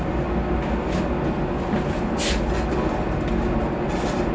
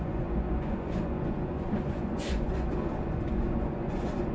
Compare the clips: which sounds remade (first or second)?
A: second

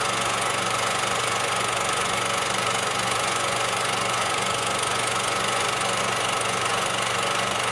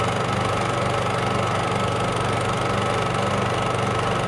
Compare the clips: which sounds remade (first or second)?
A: first